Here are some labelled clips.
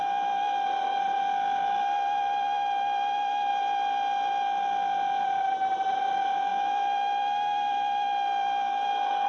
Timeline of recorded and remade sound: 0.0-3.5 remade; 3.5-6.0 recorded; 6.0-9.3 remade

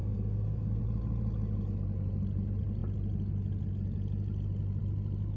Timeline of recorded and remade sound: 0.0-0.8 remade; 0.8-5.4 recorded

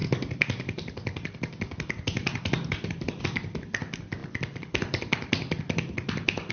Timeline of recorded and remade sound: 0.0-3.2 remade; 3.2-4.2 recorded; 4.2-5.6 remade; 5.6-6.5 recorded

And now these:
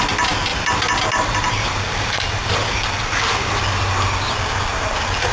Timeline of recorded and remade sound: 0.0-0.5 recorded; 0.5-3.6 remade; 3.6-4.7 recorded; 4.7-5.3 remade

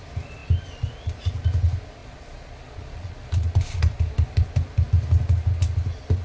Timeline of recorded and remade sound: 0.0-2.0 recorded; 2.0-3.3 remade; 3.3-6.2 recorded

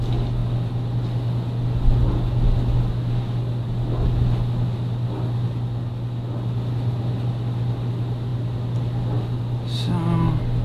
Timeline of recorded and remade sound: 0.0-10.6 recorded

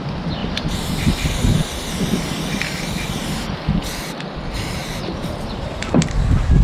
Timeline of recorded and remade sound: 0.0-4.8 recorded; 4.8-5.9 remade; 5.9-6.6 recorded

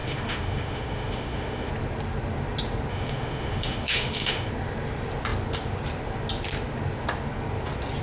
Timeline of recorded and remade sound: 0.0-1.7 remade; 1.7-2.9 recorded; 2.9-4.5 remade; 4.5-8.0 recorded